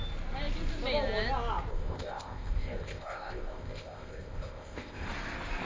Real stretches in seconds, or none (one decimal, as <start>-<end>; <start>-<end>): 0.0-1.7; 5.1-5.7